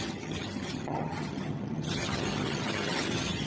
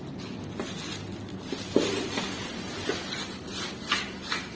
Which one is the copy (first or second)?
first